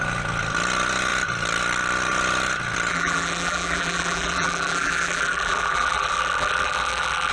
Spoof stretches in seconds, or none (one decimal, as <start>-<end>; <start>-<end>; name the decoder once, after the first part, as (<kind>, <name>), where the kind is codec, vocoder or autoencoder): 2.9-7.3 (vocoder, BigVGAN v2)

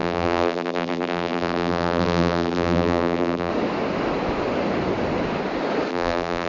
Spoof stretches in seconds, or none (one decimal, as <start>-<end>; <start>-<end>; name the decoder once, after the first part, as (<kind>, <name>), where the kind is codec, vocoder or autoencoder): 0.0-3.5 (vocoder, BigVGAN v2); 5.9-6.5

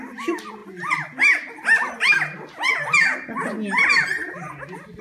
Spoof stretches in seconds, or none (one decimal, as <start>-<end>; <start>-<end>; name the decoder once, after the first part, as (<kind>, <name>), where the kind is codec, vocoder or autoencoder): none

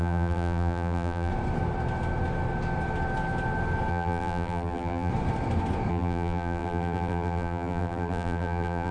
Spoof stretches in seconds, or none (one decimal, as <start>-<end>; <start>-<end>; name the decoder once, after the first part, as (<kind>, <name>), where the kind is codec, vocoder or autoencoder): 0.0-1.3 (vocoder, BigVGAN v2); 3.9-5.1; 5.9-8.9

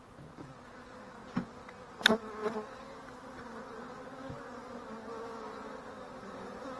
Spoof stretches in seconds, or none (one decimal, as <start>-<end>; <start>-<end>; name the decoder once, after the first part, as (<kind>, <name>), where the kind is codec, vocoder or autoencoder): none

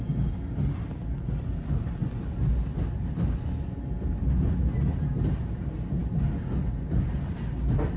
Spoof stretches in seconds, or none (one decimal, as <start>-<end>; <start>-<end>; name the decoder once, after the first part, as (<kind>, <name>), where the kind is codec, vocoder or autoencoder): none

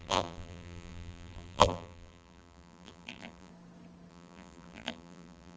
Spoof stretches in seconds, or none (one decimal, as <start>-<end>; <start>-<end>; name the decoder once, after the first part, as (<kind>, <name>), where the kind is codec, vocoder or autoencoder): 0.0-3.5 (vocoder, BigVGAN v2); 4.1-5.6